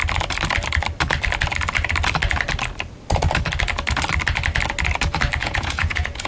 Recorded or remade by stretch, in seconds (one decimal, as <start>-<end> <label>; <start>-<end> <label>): 0.0-5.4 recorded; 5.4-6.3 remade